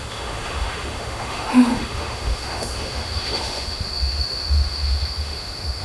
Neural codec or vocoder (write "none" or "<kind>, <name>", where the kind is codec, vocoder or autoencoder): autoencoder, DAC-VAE